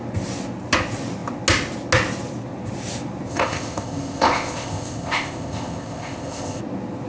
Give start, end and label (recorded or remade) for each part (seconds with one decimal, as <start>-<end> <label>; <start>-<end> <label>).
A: 0.0-3.3 recorded; 3.3-6.6 remade; 6.6-7.1 recorded